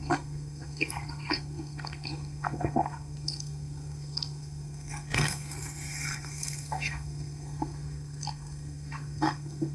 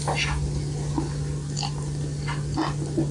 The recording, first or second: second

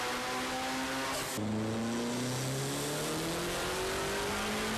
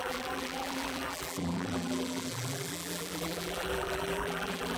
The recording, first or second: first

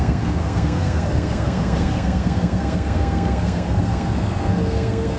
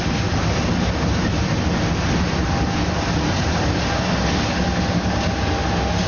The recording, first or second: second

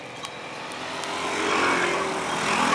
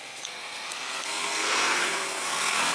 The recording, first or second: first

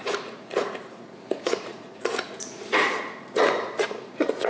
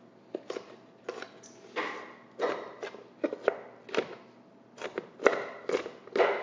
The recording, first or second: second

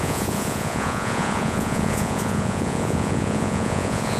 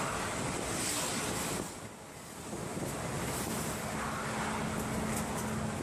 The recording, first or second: second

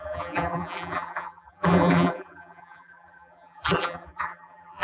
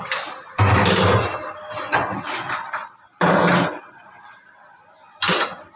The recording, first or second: second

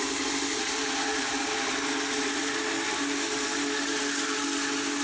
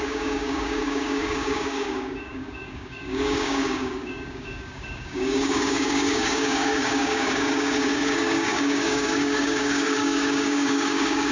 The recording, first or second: first